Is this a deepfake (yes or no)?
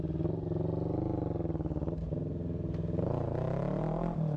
no